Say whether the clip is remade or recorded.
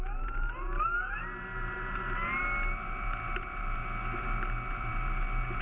recorded